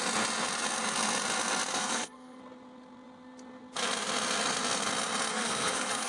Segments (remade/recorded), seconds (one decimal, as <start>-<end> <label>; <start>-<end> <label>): 0.0-1.7 recorded; 1.7-2.4 remade; 2.4-5.3 recorded; 5.3-6.1 remade

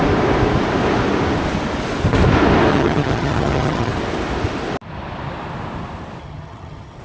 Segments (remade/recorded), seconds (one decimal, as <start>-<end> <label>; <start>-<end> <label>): 0.0-2.7 recorded; 2.7-3.9 remade; 3.9-6.2 recorded; 6.2-7.0 remade